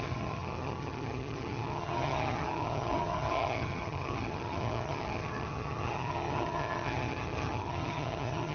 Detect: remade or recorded remade